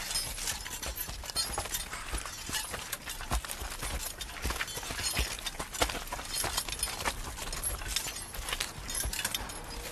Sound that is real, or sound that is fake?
real